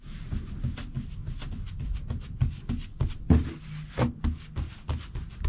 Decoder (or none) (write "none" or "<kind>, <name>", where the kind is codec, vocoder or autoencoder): none